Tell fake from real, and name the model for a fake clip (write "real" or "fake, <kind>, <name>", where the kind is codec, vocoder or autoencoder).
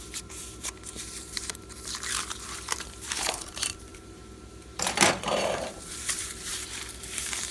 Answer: fake, vocoder, BigVGAN v2